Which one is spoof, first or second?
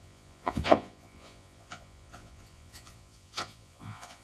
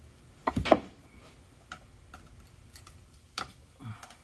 first